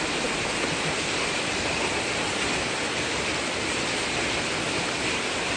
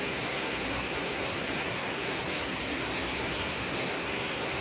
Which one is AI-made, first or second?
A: second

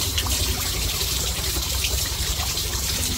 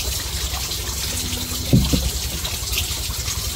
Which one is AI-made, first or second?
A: first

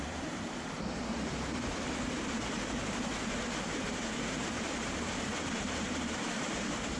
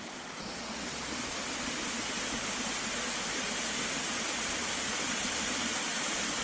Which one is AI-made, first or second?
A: first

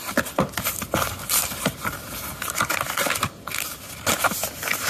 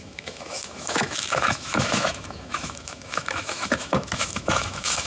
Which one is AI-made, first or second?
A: second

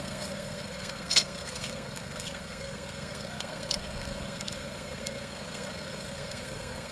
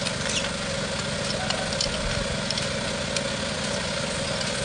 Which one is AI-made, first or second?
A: first